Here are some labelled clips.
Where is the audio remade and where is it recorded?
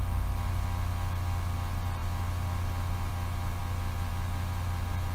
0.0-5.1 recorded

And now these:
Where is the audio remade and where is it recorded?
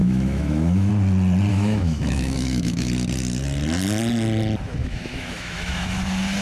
0.0-0.9 remade; 0.9-1.5 recorded; 1.5-2.9 remade; 2.9-4.8 recorded; 4.8-6.0 remade; 6.0-6.4 recorded